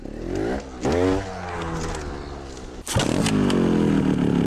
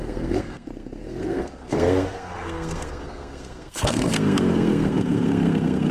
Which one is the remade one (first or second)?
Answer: second